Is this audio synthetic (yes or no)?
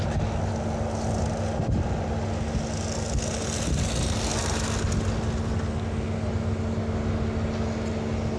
no